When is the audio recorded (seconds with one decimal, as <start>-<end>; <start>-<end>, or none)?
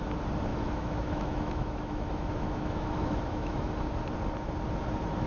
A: 0.0-0.5; 3.7-5.3